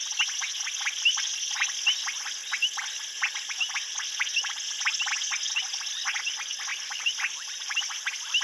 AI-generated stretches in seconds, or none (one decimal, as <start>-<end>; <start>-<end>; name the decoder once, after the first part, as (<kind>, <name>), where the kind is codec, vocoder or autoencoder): 6.7-7.8 (vocoder, BigVGAN v2)

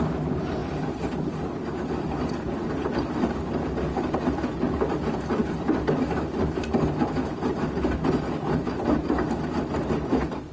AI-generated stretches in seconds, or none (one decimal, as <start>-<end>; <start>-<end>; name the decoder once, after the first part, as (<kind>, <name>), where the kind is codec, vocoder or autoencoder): 0.6-3.0 (vocoder, BigVGAN v2); 5.4-6.8

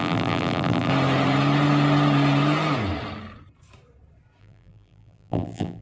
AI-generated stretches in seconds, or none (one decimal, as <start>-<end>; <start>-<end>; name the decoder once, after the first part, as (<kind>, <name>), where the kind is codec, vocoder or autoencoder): 0.0-0.9 (vocoder, BigVGAN v2); 4.4-5.8

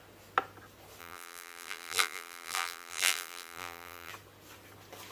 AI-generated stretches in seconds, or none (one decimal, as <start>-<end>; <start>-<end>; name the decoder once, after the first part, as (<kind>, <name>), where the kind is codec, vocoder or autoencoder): 1.0-4.1 (vocoder, BigVGAN v2)

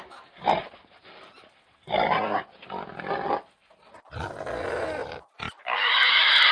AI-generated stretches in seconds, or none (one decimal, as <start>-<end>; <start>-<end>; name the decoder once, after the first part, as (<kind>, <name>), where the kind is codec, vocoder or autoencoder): none

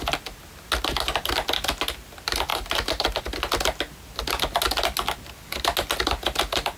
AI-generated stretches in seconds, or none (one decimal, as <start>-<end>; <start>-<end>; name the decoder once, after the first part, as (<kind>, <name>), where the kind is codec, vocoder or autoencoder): 2.5-3.2 (vocoder, BigVGAN v2)